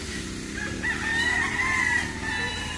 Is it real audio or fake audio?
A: fake